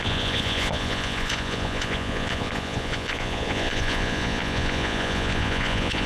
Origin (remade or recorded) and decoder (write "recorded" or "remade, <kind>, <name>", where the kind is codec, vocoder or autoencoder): remade, vocoder, Vocos